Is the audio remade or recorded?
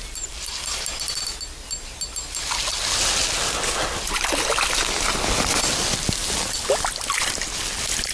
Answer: recorded